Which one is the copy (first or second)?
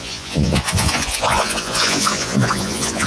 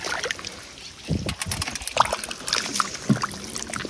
first